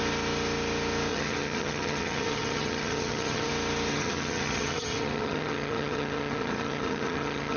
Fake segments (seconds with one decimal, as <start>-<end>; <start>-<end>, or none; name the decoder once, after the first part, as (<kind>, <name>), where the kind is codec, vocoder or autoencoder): 1.1-3.5 (vocoder, HiFi-GAN); 3.9-7.6